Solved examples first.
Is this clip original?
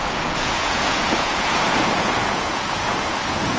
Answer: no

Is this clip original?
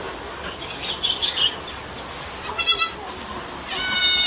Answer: yes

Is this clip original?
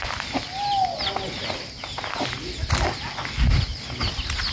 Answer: yes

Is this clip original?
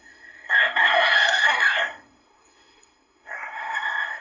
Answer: no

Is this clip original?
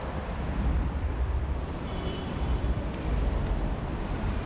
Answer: no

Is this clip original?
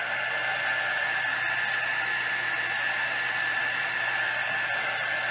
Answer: yes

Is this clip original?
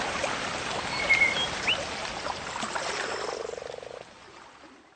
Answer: yes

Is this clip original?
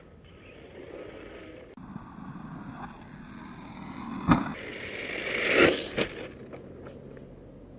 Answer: yes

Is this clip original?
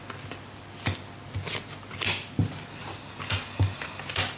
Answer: yes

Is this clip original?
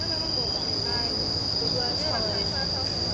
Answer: yes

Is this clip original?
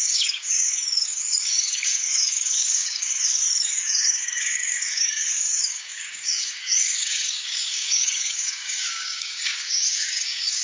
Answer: no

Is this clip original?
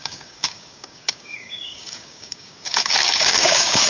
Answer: no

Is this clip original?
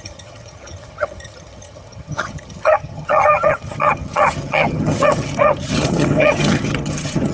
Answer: no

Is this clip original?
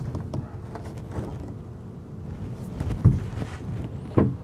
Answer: yes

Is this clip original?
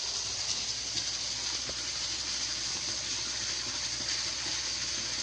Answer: yes